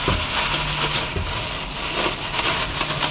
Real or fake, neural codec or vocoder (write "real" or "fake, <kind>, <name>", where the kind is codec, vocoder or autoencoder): real